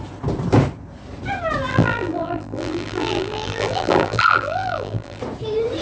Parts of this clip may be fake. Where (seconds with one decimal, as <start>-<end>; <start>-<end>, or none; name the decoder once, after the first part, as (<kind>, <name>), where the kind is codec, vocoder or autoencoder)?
1.7-5.2 (vocoder, BigVGAN v2)